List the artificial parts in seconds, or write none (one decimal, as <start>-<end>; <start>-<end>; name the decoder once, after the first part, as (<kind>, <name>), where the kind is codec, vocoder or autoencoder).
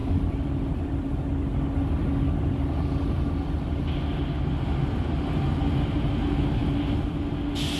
0.0-1.1 (vocoder, BigVGAN v2)